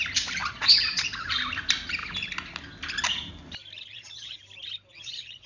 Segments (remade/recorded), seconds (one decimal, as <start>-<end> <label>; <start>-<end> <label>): 0.0-0.4 recorded; 0.4-1.3 remade; 1.3-3.9 recorded; 3.9-4.4 remade; 4.4-4.9 recorded; 4.9-5.5 remade